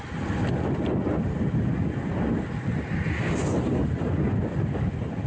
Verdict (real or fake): real